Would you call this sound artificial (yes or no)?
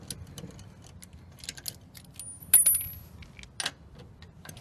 no